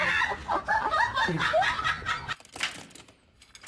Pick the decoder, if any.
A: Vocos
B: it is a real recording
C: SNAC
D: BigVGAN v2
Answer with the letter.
B